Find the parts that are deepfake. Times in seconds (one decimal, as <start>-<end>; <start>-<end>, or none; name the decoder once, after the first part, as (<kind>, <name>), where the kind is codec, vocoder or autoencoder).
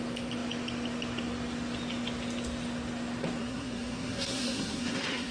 3.4-5.3 (codec, SNAC)